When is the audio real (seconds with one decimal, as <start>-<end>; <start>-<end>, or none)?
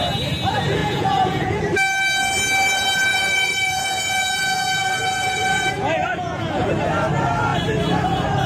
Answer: 0.0-0.8; 1.6-3.1; 6.7-8.5